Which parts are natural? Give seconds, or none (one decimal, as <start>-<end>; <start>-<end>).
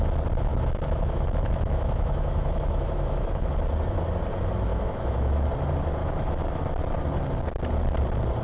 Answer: 0.0-0.5; 3.5-4.7; 5.5-6.0; 6.6-8.4